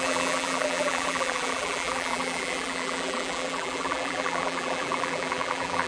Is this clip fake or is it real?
fake